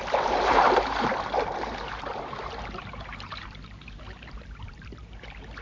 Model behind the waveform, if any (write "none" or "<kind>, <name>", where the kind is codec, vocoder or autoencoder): vocoder, BigVGAN v2